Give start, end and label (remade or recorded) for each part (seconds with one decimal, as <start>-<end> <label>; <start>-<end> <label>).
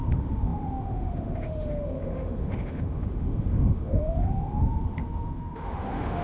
0.0-6.2 remade